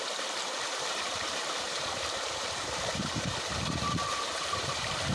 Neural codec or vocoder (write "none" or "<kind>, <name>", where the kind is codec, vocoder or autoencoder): vocoder, BigVGAN v2